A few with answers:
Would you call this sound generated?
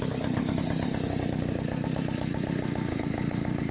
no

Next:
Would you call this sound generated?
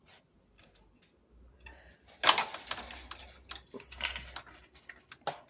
no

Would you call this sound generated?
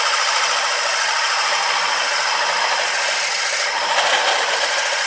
no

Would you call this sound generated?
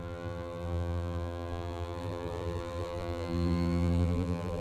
yes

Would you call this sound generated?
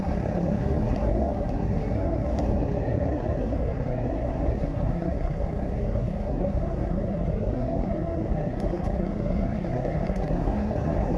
yes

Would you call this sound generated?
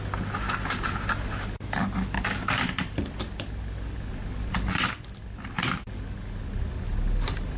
no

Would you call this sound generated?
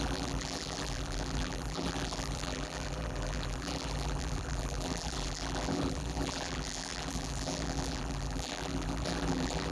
yes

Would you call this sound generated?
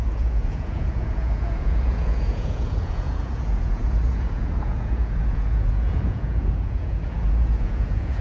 yes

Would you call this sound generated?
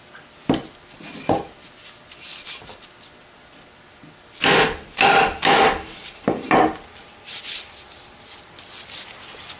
no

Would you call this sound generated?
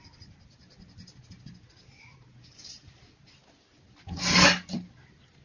no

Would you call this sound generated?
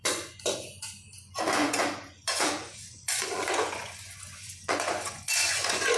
yes